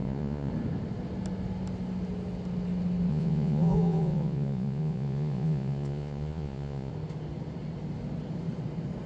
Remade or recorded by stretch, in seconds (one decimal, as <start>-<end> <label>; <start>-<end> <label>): 0.0-0.5 remade; 0.5-3.1 recorded; 3.1-6.9 remade; 6.9-9.1 recorded

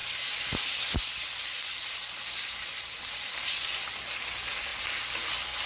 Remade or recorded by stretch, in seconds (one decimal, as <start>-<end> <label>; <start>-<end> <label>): 0.0-5.7 recorded

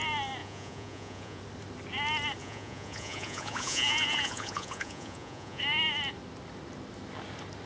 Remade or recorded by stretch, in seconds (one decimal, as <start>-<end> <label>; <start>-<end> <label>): 0.0-0.4 recorded; 0.4-1.4 remade; 1.4-2.4 recorded; 2.4-5.6 remade; 5.6-7.7 recorded

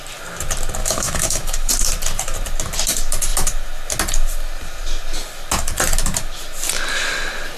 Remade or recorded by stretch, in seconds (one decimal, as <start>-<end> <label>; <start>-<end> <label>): 0.0-0.8 recorded; 0.8-1.7 remade; 1.7-7.6 recorded